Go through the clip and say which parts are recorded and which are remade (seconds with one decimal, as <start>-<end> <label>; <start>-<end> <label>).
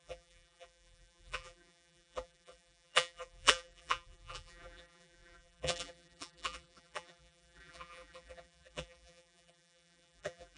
0.0-10.6 remade